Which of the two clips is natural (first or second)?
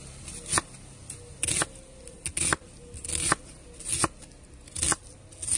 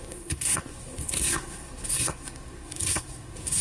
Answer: first